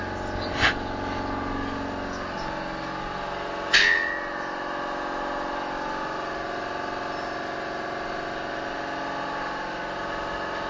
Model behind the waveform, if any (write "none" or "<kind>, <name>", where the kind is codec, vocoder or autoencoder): none